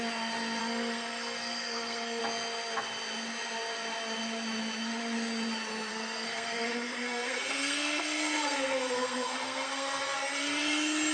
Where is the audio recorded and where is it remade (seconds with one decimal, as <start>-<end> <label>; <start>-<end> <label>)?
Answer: 0.0-0.6 recorded; 0.6-2.2 remade; 2.2-5.9 recorded; 5.9-10.0 remade; 10.0-11.1 recorded